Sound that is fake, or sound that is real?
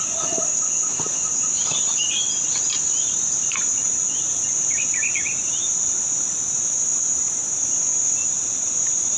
real